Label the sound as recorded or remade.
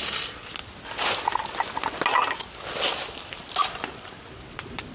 recorded